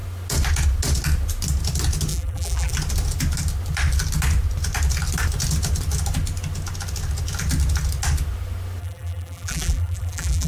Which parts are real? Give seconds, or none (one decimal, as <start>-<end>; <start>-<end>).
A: 0.0-2.1; 2.7-8.8